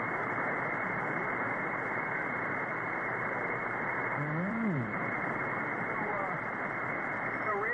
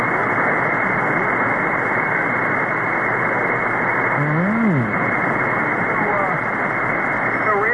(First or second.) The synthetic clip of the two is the first